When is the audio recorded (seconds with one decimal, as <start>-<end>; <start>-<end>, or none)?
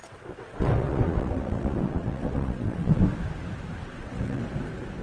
3.0-3.8; 4.4-5.0